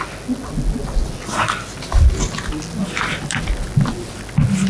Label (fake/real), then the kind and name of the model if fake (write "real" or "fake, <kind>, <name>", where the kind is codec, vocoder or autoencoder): real